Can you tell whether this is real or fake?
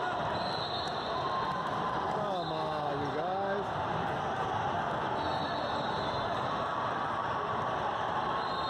real